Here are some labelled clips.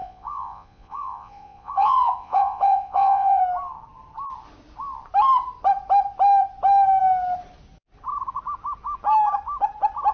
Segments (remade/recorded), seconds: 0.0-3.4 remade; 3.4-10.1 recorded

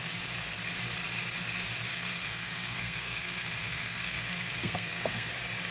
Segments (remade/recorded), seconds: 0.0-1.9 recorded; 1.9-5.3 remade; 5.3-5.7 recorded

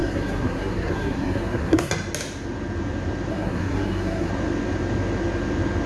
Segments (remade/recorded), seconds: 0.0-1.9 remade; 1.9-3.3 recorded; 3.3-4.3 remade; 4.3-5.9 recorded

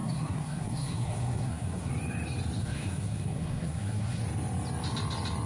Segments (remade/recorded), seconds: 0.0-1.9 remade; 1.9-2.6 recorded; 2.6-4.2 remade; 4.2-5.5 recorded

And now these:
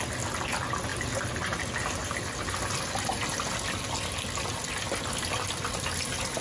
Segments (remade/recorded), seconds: 0.0-6.4 recorded

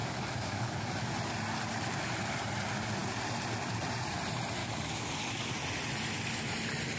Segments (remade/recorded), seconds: 0.0-0.9 remade; 0.9-4.6 recorded; 4.6-5.5 remade; 5.5-7.0 recorded

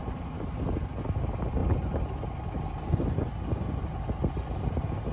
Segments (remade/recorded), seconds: 0.0-5.1 recorded